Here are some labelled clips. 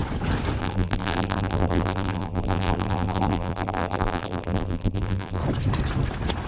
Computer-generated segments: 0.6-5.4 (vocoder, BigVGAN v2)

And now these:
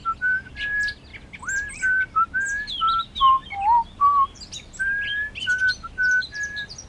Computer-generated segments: 1.1-1.8 (vocoder, BigVGAN v2)

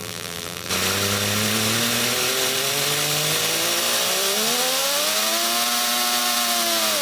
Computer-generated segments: 0.0-0.7 (vocoder, BigVGAN v2)

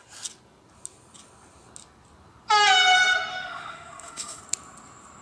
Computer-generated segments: 3.3-4.4 (autoencoder, DAC-VAE)